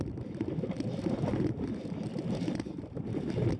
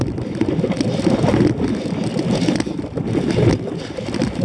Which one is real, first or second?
second